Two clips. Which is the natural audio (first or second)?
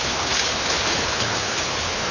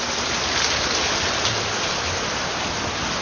second